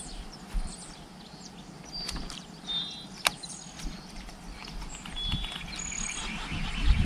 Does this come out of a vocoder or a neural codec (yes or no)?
yes